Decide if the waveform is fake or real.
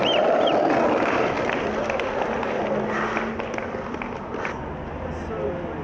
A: real